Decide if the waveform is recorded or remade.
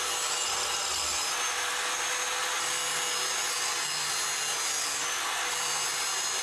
recorded